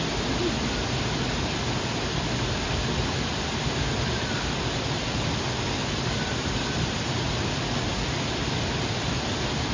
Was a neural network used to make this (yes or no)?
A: no